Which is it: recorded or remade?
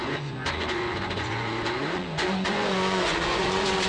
remade